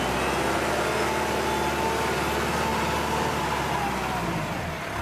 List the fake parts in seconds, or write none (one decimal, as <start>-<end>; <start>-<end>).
2.7-4.6